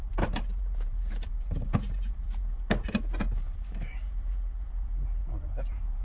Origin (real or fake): fake